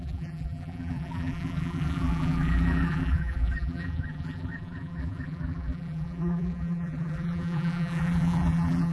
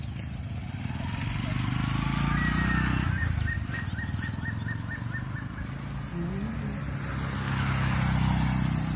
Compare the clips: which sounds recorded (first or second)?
second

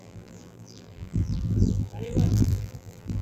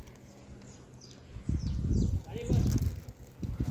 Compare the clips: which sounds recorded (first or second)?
second